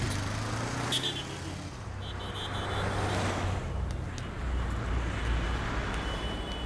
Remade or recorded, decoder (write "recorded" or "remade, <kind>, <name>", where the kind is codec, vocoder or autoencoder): recorded